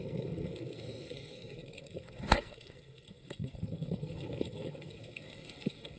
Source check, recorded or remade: remade